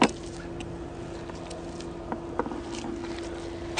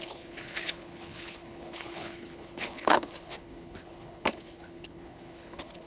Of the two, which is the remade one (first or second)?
second